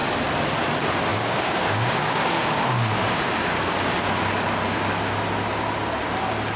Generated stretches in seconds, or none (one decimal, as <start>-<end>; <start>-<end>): 1.1-4.2